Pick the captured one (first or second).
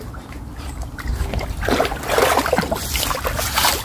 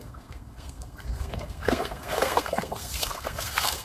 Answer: first